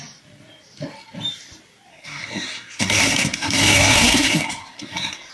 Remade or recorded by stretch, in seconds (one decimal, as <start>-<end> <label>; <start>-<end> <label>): 0.0-1.9 recorded; 1.9-5.3 remade